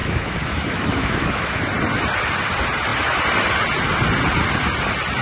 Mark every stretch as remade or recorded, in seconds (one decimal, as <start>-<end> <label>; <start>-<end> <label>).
0.0-1.6 remade; 1.6-5.2 recorded